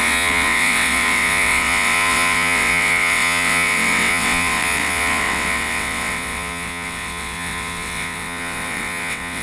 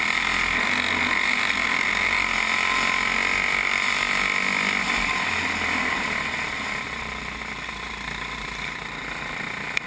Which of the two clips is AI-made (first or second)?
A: first